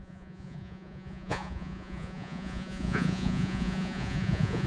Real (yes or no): no